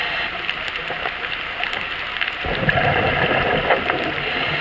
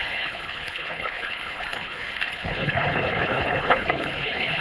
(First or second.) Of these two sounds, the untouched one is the first